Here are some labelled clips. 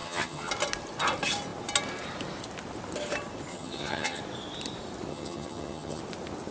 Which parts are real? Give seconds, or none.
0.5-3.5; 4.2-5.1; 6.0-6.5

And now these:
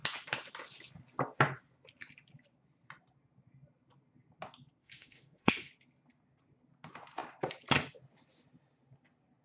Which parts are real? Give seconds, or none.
0.0-4.8; 5.7-9.4

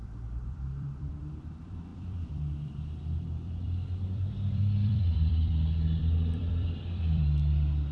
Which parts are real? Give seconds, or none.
none

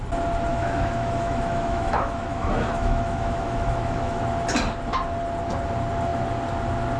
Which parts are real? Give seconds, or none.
0.0-0.5; 4.2-7.0

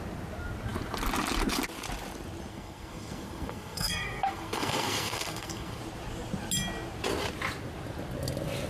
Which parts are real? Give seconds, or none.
0.0-2.5; 5.8-8.7